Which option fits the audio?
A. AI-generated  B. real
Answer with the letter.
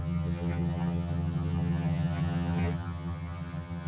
A